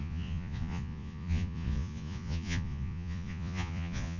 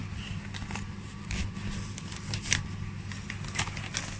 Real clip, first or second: second